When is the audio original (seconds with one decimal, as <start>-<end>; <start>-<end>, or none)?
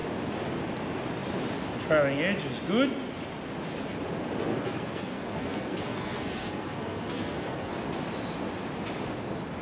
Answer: 0.0-4.5; 7.7-9.6